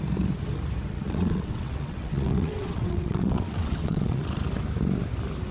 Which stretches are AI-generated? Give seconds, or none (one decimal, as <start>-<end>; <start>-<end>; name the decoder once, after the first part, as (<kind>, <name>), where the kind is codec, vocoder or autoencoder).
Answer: 0.9-4.2 (vocoder, WaveNeXt)